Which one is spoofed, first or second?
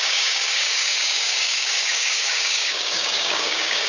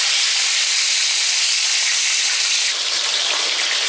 first